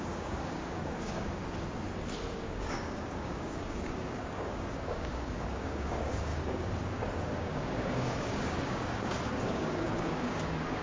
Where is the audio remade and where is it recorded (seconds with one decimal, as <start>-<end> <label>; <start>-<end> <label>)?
0.0-1.4 remade; 1.4-2.3 recorded; 2.3-10.8 remade